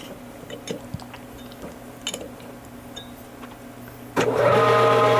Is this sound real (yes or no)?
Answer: yes